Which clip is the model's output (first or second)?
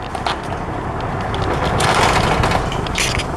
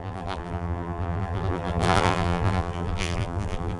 second